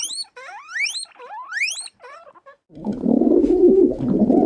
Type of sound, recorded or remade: recorded